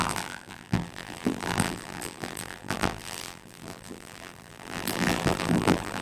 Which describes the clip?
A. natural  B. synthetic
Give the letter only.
B